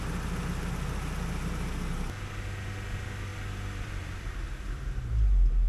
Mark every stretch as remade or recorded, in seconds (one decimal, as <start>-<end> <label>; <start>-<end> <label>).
0.0-3.3 recorded; 3.3-4.8 remade; 4.8-5.7 recorded